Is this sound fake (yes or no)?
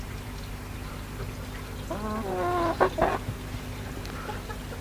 no